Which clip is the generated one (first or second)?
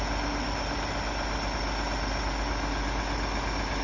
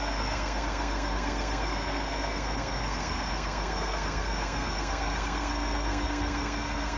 second